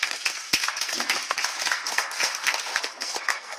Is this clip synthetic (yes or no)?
yes